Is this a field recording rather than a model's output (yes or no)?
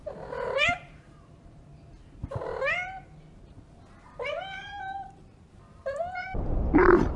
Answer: no